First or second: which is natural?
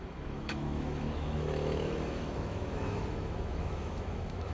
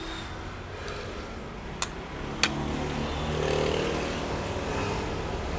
second